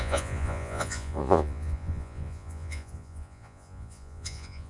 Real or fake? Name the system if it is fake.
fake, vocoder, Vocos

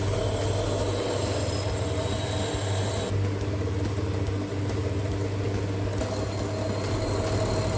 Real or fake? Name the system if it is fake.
real